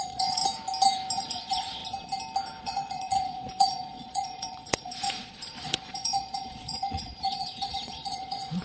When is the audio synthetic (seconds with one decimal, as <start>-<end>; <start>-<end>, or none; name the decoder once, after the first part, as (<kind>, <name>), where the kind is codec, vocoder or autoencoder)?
0.0-0.4 (vocoder, Vocos); 1.2-1.8; 2.6-8.6